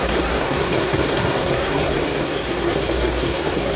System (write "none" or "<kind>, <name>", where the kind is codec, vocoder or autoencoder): codec, SNAC